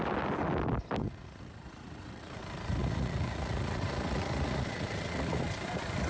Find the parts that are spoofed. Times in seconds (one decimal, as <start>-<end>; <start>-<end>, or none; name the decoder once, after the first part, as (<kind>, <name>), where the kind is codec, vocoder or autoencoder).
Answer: 1.0-2.4 (vocoder, Vocos); 2.8-5.4